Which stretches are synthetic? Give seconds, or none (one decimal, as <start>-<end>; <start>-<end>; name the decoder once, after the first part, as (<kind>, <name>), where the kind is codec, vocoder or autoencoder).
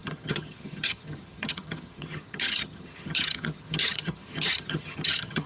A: 0.0-5.5 (vocoder, HiFi-GAN)